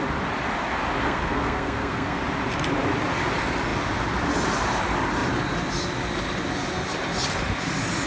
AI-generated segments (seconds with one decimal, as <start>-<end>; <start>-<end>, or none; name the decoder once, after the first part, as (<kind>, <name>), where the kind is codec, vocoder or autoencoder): 1.0-2.2 (codec, SNAC)